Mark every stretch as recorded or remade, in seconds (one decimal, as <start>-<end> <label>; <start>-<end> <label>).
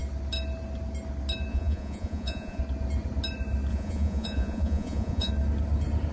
0.0-1.5 recorded; 1.5-2.6 remade; 2.6-3.7 recorded; 3.7-5.3 remade; 5.3-6.1 recorded